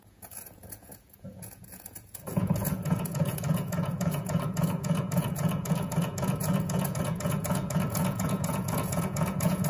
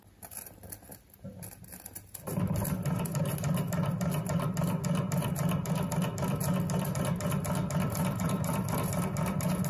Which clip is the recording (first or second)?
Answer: second